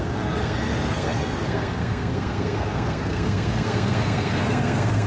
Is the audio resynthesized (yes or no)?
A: yes